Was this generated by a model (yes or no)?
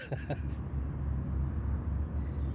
no